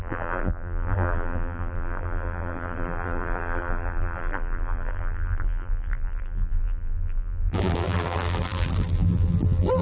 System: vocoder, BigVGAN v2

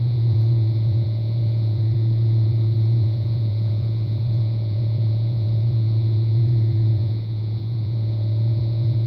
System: vocoder, Vocos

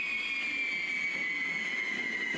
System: none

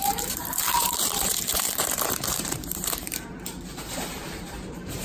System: vocoder, BigVGAN v2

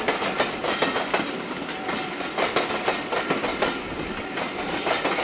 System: none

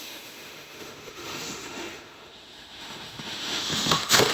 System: autoencoder, DAC-VAE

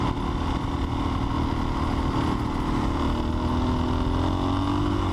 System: none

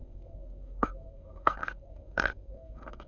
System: codec, SNAC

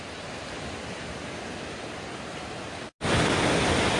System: none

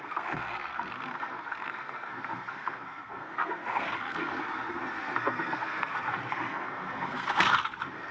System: codec, SNAC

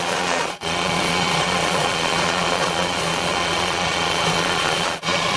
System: vocoder, Vocos